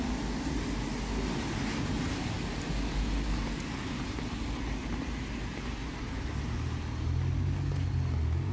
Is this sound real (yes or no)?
yes